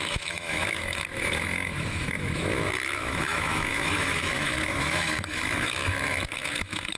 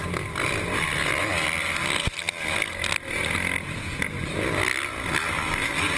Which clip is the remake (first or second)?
first